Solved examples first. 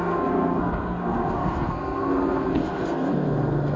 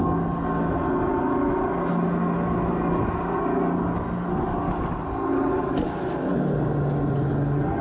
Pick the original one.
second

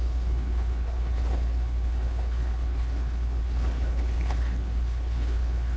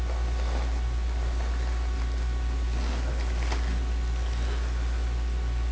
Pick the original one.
second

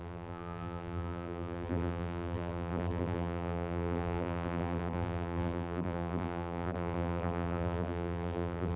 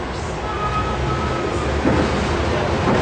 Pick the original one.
second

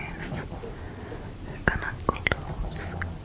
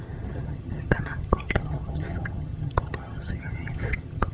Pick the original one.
first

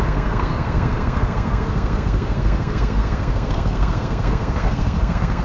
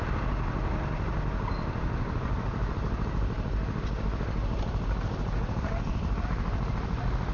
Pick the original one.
second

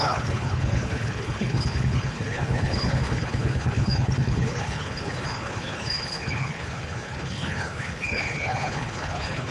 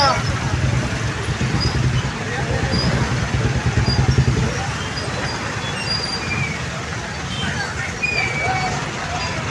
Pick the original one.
second